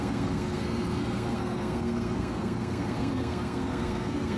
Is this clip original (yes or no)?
no